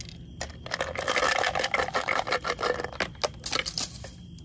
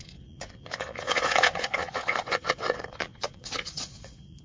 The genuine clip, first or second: first